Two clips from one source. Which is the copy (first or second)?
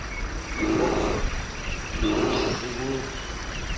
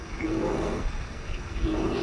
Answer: second